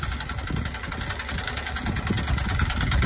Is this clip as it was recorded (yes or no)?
yes